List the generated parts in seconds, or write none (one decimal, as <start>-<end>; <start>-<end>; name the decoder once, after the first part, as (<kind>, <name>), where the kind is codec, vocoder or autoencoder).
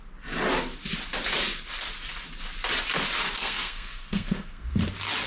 3.4-4.8 (codec, SNAC)